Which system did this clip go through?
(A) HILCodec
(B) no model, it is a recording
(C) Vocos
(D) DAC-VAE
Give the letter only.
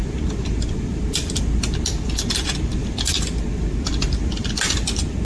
B